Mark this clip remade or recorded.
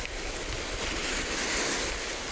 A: recorded